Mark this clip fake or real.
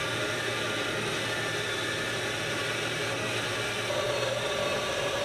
real